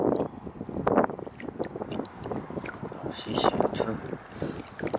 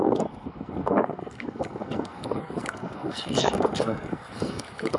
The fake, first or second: second